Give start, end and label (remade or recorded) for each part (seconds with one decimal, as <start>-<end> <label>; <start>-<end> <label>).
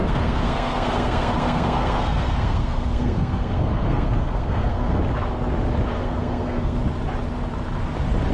0.0-5.0 remade; 5.0-5.9 recorded; 5.9-6.8 remade; 6.8-8.3 recorded